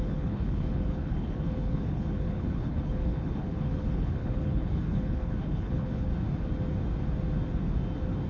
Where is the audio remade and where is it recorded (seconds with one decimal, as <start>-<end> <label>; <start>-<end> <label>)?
0.0-6.1 remade; 6.1-8.3 recorded